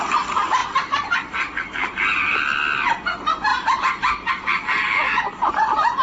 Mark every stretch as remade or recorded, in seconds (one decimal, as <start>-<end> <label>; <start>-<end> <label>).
0.0-0.6 recorded; 0.6-2.4 remade; 2.4-3.5 recorded; 3.5-5.5 remade; 5.5-6.0 recorded